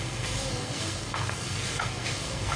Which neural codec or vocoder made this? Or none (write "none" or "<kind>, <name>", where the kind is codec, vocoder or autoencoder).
codec, SNAC